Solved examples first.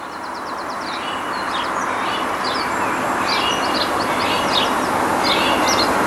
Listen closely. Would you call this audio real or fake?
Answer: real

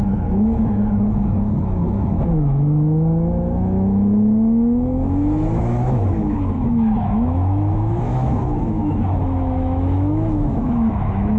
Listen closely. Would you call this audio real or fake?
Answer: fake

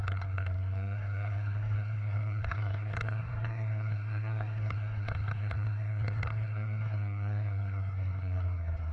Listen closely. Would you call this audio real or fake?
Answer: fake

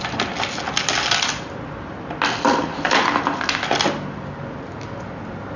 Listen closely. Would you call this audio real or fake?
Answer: real